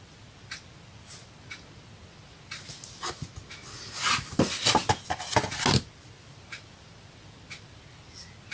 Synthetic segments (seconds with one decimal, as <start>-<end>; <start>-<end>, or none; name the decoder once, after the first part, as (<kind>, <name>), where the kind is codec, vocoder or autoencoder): none